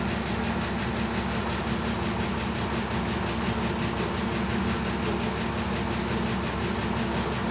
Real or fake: real